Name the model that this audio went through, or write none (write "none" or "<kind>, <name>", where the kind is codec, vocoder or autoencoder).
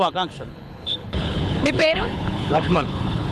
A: codec, HILCodec